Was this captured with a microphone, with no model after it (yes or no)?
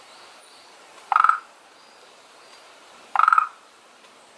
no